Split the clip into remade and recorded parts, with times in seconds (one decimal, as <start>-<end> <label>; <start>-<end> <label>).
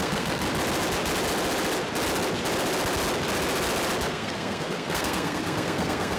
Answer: 0.0-0.4 remade; 0.4-4.1 recorded; 4.1-6.2 remade